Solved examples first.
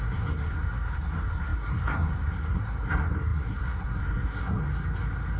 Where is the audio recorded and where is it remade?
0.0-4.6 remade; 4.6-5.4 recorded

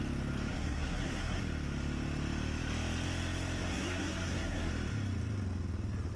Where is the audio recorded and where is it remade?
0.0-0.5 recorded; 0.5-1.4 remade; 1.4-3.7 recorded; 3.7-4.7 remade; 4.7-6.2 recorded

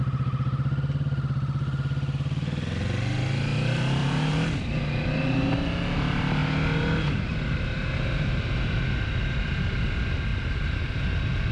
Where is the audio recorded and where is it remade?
0.0-4.0 recorded; 4.0-4.5 remade; 4.5-10.3 recorded; 10.3-11.0 remade; 11.0-11.5 recorded

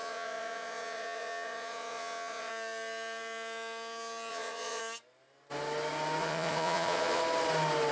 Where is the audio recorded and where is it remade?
0.0-2.5 remade; 2.5-4.3 recorded; 4.3-4.8 remade; 4.8-6.2 recorded; 6.2-7.2 remade; 7.2-7.9 recorded

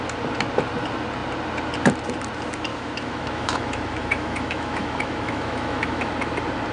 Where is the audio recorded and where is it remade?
0.0-2.7 recorded; 2.7-6.1 remade; 6.1-6.7 recorded

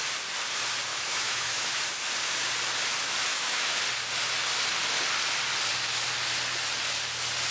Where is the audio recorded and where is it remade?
0.0-0.9 recorded; 0.9-1.8 remade; 1.8-3.3 recorded; 3.3-3.8 remade; 3.8-7.5 recorded

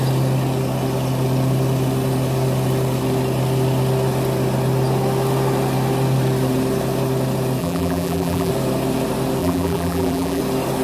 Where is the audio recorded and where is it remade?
0.0-7.6 recorded; 7.6-8.5 remade; 8.5-9.4 recorded; 9.4-10.4 remade; 10.4-10.8 recorded